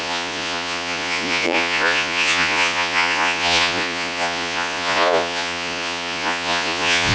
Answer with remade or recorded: remade